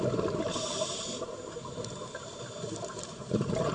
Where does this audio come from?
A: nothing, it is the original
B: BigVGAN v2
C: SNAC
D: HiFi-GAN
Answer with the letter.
B